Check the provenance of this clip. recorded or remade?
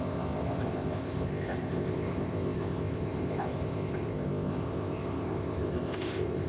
remade